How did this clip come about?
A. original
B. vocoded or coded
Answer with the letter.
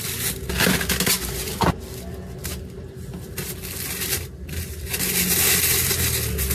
A